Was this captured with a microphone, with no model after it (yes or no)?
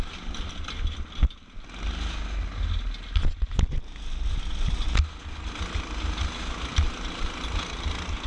yes